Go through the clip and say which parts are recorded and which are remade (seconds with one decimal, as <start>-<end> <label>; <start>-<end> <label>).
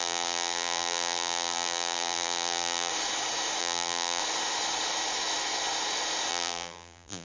0.0-2.9 remade; 2.9-3.6 recorded; 3.6-4.2 remade; 4.2-6.3 recorded; 6.3-7.2 remade